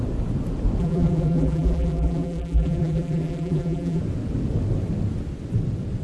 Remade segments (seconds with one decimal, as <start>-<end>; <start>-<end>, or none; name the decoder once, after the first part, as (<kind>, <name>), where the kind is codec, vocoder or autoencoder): 0.8-4.0 (vocoder, BigVGAN v2)